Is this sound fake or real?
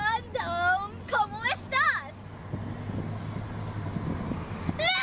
real